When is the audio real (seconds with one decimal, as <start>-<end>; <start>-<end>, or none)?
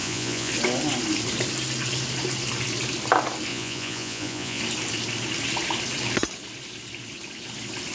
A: 0.5-3.5; 4.6-7.9